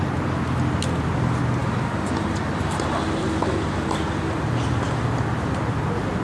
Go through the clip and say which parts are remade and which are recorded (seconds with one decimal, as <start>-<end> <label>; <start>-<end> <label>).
0.0-6.2 recorded